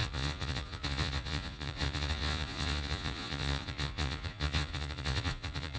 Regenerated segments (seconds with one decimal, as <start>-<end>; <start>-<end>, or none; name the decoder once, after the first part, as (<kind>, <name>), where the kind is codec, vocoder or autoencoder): 0.0-5.8 (vocoder, Vocos)